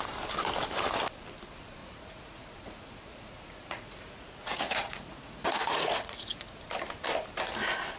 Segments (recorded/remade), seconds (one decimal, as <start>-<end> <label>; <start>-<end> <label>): 0.0-1.8 recorded; 1.8-6.6 remade; 6.6-8.0 recorded